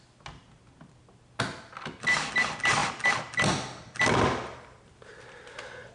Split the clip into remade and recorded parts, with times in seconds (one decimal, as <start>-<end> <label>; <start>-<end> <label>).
0.0-5.9 recorded